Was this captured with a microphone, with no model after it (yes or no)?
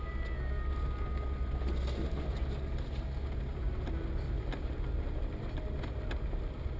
yes